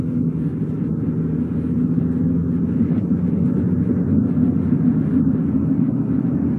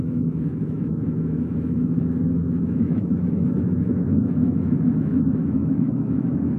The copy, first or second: second